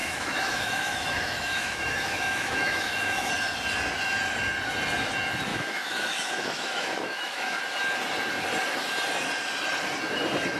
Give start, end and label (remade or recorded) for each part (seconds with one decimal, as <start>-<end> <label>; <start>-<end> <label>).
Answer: 0.0-3.3 remade; 3.3-5.5 recorded; 5.5-7.6 remade; 7.6-10.6 recorded